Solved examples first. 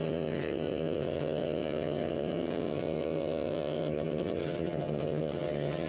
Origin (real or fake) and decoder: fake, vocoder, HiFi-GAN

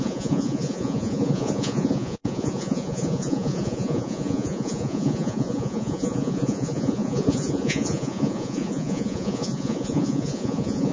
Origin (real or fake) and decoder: fake, vocoder, Vocos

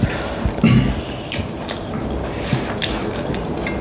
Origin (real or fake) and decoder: real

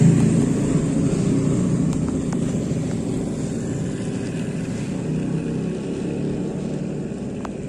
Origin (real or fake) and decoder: real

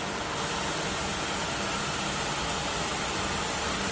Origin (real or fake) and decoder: real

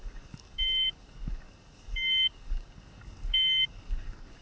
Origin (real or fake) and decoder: fake, codec, DAC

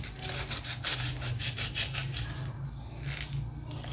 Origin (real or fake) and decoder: real